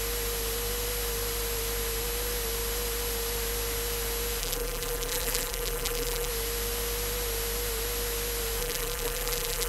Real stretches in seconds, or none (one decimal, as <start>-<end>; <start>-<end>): 0.0-4.4; 6.3-8.6